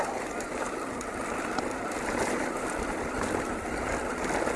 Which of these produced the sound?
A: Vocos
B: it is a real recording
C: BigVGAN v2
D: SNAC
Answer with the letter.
B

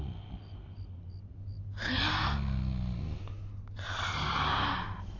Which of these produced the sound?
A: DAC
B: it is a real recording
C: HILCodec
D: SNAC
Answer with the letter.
B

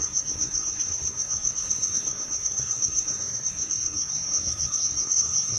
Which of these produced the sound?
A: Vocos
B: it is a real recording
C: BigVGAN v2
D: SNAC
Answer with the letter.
D